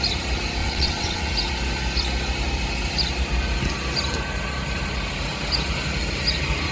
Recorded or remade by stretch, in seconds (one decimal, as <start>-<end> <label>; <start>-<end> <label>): 0.0-0.6 recorded; 0.6-1.3 remade; 1.3-6.7 recorded